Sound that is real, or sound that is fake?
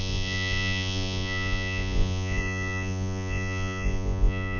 fake